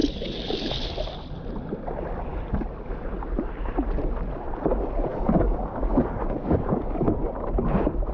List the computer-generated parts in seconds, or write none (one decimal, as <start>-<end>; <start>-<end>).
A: 0.0-0.7; 5.1-7.3